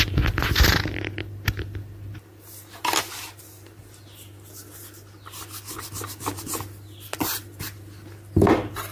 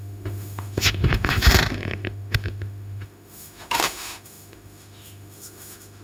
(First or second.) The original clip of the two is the first